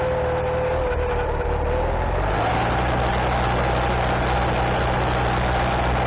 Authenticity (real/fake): real